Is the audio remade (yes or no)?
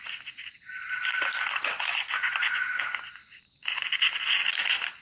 no